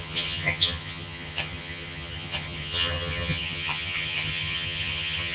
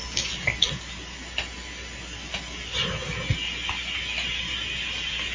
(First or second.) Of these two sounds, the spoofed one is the first